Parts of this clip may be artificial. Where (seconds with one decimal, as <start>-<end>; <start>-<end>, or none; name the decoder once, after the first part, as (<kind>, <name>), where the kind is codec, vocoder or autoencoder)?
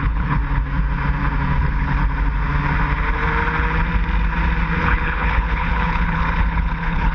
0.0-0.4 (codec, HILCodec); 1.6-2.0; 4.8-7.1